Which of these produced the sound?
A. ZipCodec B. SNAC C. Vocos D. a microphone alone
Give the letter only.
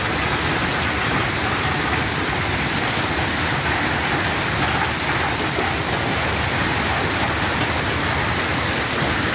D